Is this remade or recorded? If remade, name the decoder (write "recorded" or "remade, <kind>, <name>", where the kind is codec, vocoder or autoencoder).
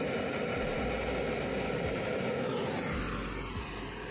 recorded